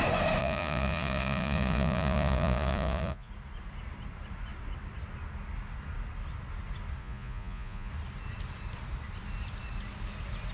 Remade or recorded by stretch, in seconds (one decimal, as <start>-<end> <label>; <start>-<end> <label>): 0.0-0.4 recorded; 0.4-3.3 remade; 3.3-7.0 recorded; 7.0-7.9 remade; 7.9-10.5 recorded